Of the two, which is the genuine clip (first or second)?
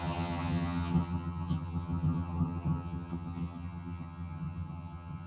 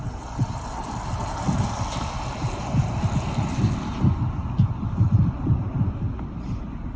second